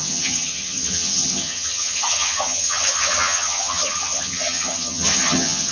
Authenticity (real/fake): fake